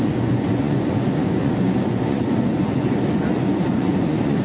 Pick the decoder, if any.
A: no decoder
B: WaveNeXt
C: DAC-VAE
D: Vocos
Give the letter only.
D